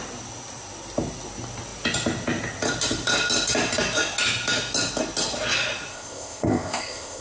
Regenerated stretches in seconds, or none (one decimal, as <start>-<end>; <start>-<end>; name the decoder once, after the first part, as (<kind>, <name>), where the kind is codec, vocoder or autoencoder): 5.9-7.2 (codec, ZipCodec)